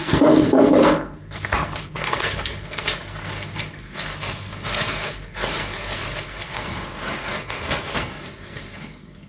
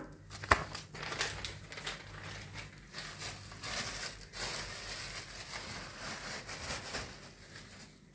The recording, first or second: second